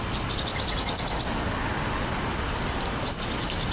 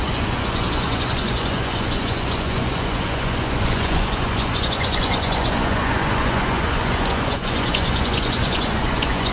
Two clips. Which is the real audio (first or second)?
first